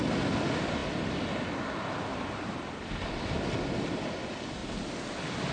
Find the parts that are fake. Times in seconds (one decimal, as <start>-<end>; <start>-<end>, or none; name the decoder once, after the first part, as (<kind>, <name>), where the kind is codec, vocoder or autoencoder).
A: none